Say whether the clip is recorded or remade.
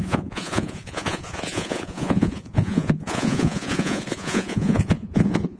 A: remade